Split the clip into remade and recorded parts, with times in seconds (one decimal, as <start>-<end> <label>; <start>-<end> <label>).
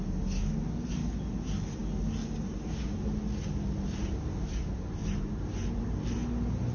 0.0-5.0 recorded; 5.0-5.8 remade; 5.8-6.7 recorded